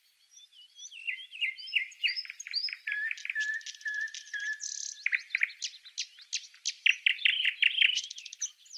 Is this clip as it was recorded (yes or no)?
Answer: yes